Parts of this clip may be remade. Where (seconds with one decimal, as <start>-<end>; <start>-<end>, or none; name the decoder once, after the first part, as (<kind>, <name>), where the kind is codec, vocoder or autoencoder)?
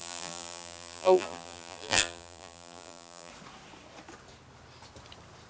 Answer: 0.0-3.3 (vocoder, BigVGAN v2)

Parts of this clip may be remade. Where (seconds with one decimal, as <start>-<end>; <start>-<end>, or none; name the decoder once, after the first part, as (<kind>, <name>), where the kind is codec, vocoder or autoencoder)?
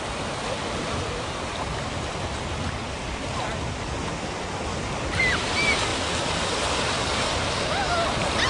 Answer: none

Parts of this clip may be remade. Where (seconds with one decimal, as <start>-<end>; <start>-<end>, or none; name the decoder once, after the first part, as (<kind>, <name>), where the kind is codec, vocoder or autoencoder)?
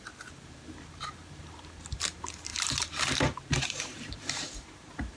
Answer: 0.0-2.5 (vocoder, BigVGAN v2); 3.4-5.2